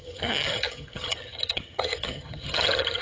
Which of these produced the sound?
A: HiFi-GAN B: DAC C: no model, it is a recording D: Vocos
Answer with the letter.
A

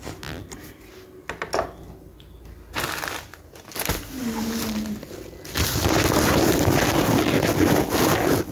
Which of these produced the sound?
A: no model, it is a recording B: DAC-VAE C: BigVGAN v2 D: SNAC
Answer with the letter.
A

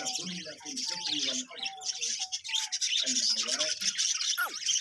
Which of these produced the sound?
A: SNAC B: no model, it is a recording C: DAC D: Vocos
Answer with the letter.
B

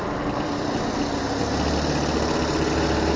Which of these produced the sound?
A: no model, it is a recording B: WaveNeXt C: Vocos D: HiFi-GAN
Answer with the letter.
A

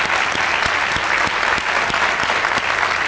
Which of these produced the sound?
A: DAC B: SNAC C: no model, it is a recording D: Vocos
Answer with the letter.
C